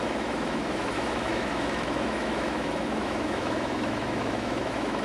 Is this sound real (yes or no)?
no